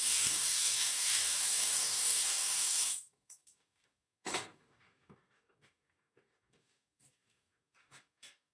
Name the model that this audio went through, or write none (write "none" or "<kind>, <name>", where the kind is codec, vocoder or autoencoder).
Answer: codec, DAC